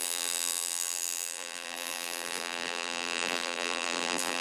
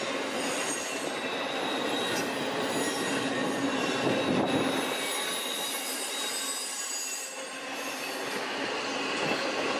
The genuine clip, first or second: second